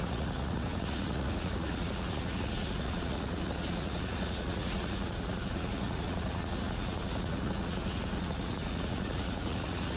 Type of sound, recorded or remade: remade